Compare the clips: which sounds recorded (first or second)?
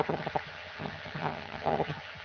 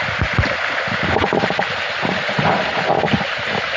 second